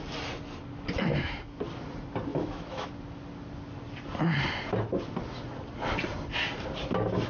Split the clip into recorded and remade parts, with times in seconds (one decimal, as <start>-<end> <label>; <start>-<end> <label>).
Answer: 0.0-1.1 recorded; 1.1-1.6 remade; 1.6-2.3 recorded; 2.3-2.9 remade; 2.9-7.3 recorded